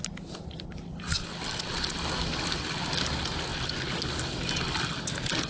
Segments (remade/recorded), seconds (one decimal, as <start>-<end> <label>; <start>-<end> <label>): 0.0-5.5 recorded